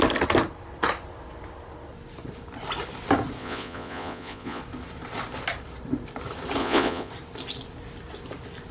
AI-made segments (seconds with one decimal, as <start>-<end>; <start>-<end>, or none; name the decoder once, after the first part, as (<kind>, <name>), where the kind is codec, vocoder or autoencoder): 3.4-4.6 (vocoder, Vocos); 6.6-7.1

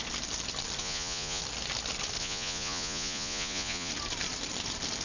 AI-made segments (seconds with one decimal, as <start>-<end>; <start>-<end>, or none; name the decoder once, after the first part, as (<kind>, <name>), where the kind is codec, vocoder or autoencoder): 0.8-1.4 (vocoder, Vocos); 2.2-3.9

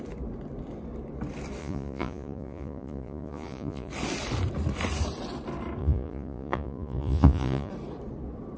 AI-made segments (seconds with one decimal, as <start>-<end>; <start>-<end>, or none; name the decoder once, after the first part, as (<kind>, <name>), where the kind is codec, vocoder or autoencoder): 1.6-3.9 (vocoder, Vocos); 5.8-7.7